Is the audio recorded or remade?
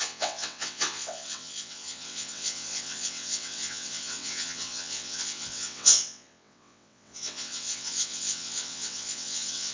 remade